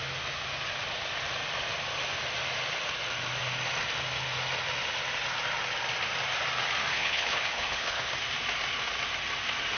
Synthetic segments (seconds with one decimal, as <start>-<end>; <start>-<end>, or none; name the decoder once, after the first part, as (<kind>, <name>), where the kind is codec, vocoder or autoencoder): 6.9-8.1 (codec, HILCodec)